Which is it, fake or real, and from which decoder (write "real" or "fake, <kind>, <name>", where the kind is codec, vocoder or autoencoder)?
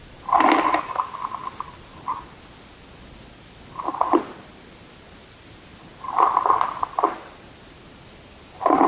real